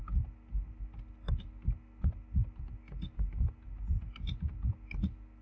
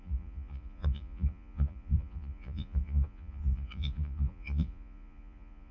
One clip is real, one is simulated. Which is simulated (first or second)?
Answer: second